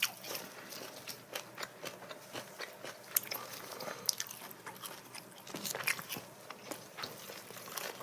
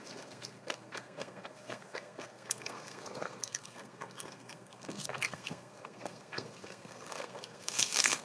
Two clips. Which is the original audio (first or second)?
first